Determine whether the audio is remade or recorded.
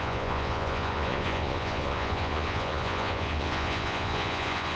remade